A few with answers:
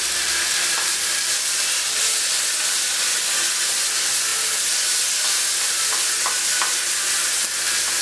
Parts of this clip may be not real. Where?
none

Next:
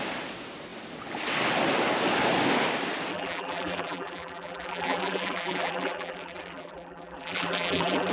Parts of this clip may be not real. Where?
3.1-8.1 (vocoder, BigVGAN v2)

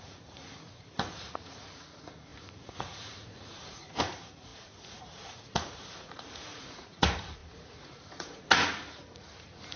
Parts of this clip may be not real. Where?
0.0-9.8 (vocoder, Vocos)

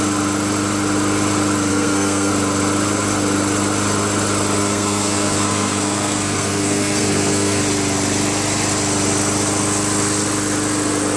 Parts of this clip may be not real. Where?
1.7-2.3 (codec, SNAC); 4.6-7.6

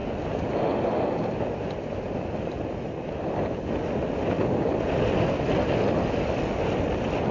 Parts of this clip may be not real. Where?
none

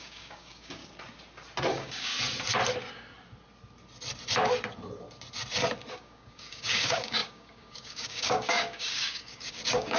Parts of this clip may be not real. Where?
0.0-0.8 (codec, DAC); 1.7-2.1; 5.9-10.0

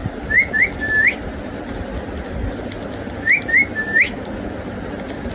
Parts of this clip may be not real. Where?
none

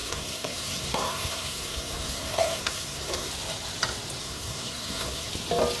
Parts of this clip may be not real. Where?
0.0-3.3 (codec, SNAC); 4.2-5.3